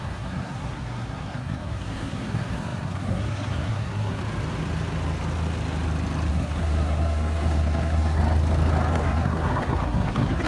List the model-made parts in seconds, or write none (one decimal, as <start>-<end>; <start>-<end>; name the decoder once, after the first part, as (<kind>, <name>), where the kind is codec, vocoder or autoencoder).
0.0-4.2 (codec, SNAC); 6.3-8.2; 8.9-10.5